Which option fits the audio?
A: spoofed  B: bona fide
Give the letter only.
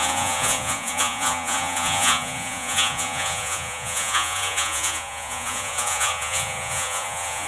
A